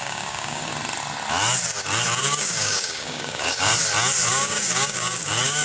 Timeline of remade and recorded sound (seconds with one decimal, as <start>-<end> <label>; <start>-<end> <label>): 0.0-0.7 remade; 0.7-2.2 recorded; 2.2-3.7 remade; 3.7-4.3 recorded; 4.3-5.6 remade